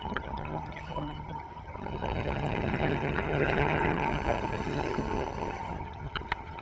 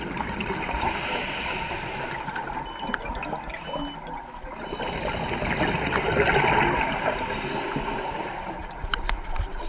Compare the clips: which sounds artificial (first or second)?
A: first